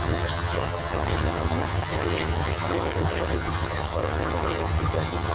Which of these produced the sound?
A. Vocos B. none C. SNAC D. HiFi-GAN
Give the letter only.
D